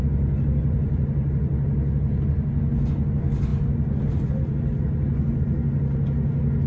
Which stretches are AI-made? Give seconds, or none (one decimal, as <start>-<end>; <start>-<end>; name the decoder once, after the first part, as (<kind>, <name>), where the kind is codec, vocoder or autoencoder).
none